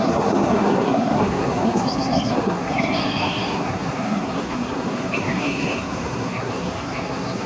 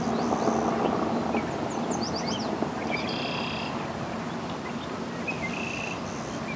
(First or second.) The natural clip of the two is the second